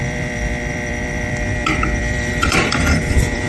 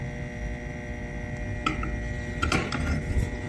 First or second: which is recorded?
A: second